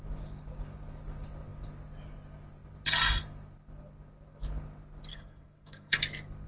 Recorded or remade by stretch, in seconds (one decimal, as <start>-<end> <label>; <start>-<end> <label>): 0.0-5.1 recorded; 5.1-6.0 remade; 6.0-6.5 recorded